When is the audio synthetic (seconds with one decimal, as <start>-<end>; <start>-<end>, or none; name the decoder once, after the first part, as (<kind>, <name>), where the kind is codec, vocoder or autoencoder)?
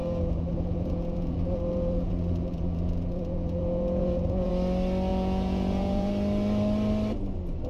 0.0-4.5 (vocoder, Vocos); 5.1-6.1